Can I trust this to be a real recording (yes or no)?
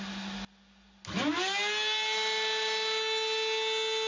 yes